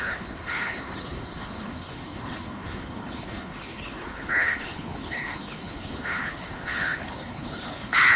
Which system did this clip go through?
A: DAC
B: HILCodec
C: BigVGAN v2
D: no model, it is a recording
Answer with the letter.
B